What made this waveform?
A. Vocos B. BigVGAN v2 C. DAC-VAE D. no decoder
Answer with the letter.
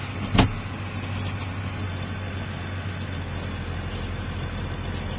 D